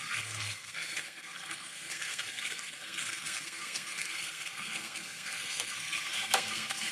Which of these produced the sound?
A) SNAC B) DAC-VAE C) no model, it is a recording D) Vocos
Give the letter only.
A